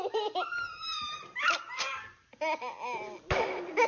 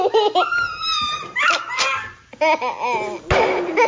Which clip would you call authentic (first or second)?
second